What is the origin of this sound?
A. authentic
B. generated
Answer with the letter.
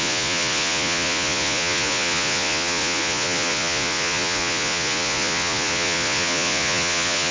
B